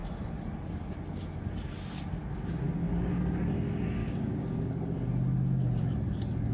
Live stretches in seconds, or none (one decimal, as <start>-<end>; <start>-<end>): 0.0-2.8; 3.4-4.0; 4.7-6.5